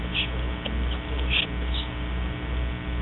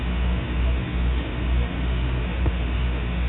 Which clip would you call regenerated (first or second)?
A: second